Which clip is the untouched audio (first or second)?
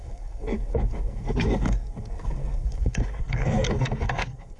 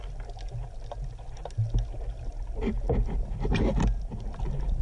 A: second